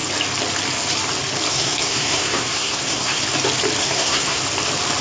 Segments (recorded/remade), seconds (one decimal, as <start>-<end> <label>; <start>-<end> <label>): 0.0-1.5 recorded; 1.5-3.2 remade; 3.2-3.8 recorded; 3.8-4.4 remade; 4.4-5.0 recorded